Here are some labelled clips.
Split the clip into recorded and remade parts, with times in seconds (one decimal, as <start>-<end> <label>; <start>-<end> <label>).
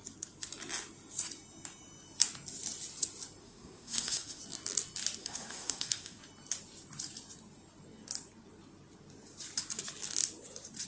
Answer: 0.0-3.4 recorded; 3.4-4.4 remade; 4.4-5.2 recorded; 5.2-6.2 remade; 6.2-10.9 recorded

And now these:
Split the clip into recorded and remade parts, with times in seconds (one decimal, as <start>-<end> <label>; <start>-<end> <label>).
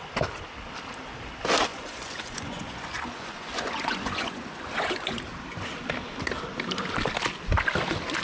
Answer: 0.0-1.7 recorded; 1.7-5.2 remade; 5.2-8.2 recorded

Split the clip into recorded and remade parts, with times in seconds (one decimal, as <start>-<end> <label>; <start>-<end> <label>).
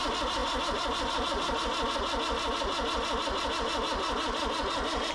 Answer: 0.0-5.1 recorded